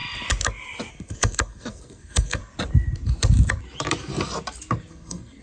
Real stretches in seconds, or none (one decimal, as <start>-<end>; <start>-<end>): 0.0-0.9; 2.4-4.9

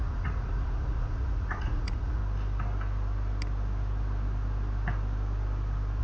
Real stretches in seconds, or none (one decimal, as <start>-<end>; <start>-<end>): 2.2-6.0

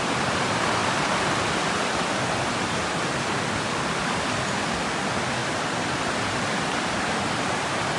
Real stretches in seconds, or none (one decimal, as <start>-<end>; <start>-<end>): 0.0-5.4; 6.0-8.0

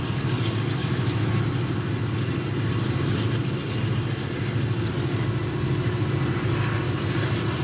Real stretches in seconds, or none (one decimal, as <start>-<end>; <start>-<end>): 0.0-0.8; 1.4-7.6

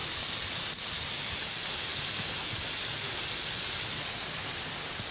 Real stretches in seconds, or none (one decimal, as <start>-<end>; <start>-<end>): 0.0-5.1

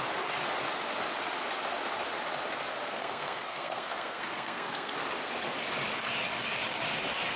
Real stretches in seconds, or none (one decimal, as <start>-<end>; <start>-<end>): 0.0-2.8; 4.9-7.4

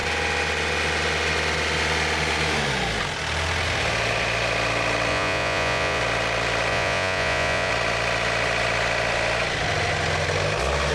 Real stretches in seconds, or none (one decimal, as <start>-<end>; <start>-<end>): 0.0-5.1; 6.0-6.7; 7.7-10.9